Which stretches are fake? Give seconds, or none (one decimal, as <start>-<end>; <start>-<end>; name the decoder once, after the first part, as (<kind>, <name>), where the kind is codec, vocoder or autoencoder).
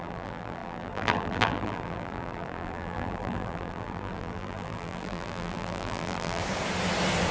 0.0-6.4 (vocoder, BigVGAN v2)